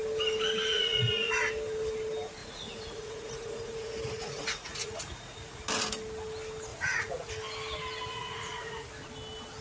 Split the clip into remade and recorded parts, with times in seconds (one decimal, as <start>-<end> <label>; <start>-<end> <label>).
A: 0.0-0.7 recorded; 0.7-1.3 remade; 1.3-2.4 recorded; 2.4-5.6 remade; 5.6-6.7 recorded; 6.7-7.3 remade; 7.3-8.1 recorded; 8.1-8.9 remade; 8.9-9.6 recorded

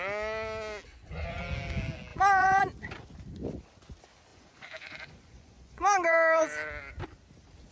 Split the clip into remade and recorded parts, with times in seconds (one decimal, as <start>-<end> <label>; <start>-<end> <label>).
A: 0.0-0.9 recorded; 0.9-1.4 remade; 1.4-2.1 recorded; 2.1-2.6 remade; 2.6-4.3 recorded; 4.3-6.4 remade; 6.4-7.7 recorded

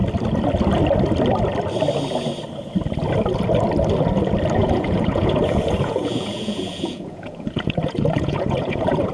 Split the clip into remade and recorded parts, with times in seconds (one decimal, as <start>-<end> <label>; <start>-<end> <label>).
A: 0.0-4.6 recorded; 4.6-9.1 remade

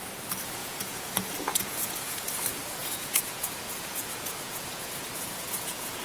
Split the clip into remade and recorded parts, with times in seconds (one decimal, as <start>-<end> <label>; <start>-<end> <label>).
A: 0.0-0.6 recorded; 0.6-1.1 remade; 1.1-1.5 recorded; 1.5-2.3 remade; 2.3-2.8 recorded; 2.8-6.0 remade

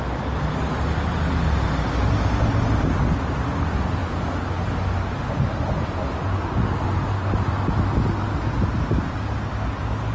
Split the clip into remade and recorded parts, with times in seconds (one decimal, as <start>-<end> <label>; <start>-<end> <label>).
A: 0.0-10.1 recorded

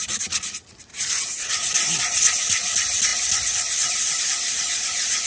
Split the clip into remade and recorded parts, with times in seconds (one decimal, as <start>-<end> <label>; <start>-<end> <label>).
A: 0.0-0.9 recorded; 0.9-1.5 remade; 1.5-5.3 recorded